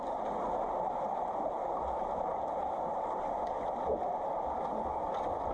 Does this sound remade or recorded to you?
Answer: recorded